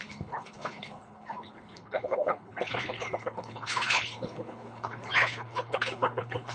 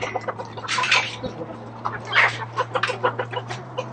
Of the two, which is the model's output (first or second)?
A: first